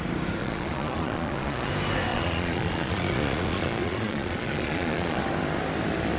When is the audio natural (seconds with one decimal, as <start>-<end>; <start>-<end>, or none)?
0.0-0.4; 1.7-2.1; 5.2-6.2